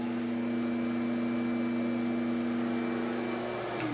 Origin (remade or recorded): recorded